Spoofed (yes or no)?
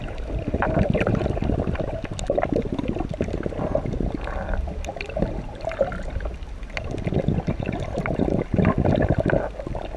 no